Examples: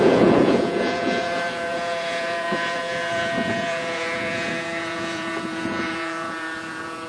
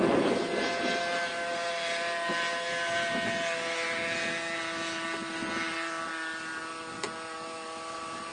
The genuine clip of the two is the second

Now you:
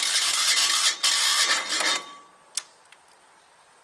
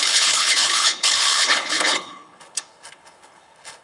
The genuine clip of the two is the first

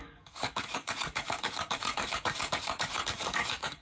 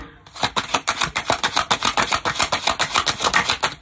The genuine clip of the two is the second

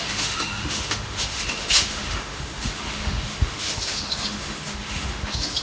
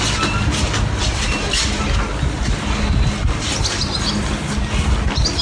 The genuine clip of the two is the second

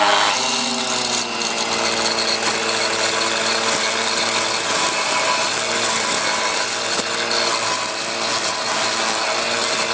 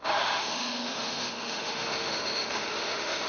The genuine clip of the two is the first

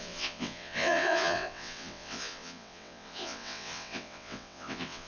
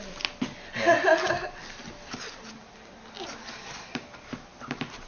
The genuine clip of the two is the second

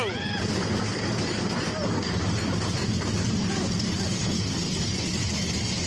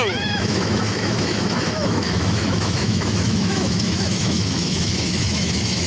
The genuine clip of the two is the first